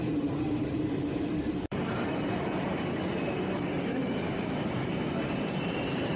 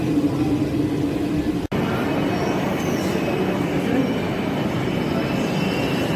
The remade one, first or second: first